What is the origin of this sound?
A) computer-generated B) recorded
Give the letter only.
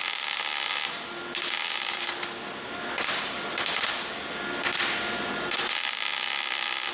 B